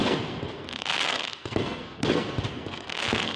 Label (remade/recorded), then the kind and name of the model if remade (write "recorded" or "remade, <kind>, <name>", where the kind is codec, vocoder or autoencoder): remade, codec, SNAC